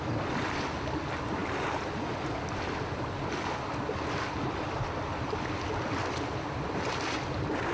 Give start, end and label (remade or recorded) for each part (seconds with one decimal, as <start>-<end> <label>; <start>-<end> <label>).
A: 0.0-7.7 recorded